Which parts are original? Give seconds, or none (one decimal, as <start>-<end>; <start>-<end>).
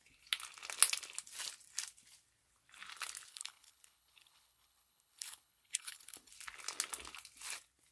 0.0-3.3; 6.3-7.9